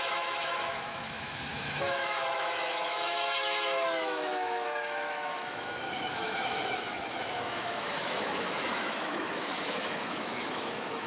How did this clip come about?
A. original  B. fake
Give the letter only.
B